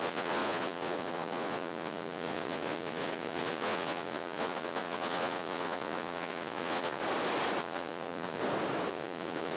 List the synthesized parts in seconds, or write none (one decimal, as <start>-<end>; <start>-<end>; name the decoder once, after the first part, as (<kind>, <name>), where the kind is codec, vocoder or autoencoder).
0.0-7.0 (vocoder, Vocos); 7.6-8.4; 8.9-9.6